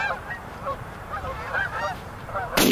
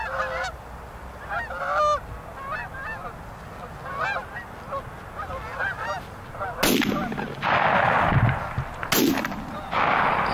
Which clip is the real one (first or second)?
second